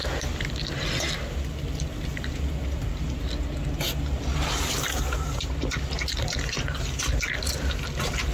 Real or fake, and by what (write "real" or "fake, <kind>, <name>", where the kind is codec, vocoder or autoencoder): real